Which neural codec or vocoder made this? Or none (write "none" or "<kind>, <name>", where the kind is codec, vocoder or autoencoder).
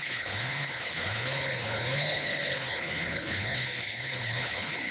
codec, HILCodec